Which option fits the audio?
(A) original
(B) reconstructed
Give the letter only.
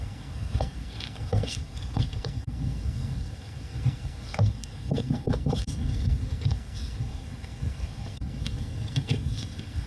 B